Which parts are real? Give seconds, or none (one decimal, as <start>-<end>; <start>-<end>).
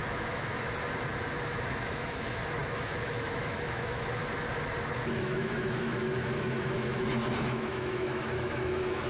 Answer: 0.5-1.2; 4.2-4.9